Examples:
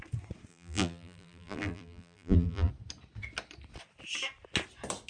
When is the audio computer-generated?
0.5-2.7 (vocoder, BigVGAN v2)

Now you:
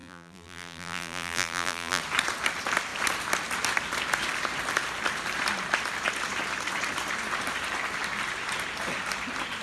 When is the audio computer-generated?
0.0-2.0 (vocoder, BigVGAN v2)

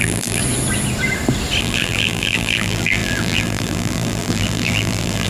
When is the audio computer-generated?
0.0-0.4 (vocoder, BigVGAN v2); 1.6-5.3